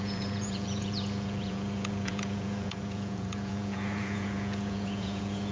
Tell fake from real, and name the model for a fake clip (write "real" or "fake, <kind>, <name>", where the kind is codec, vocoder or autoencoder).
fake, vocoder, Vocos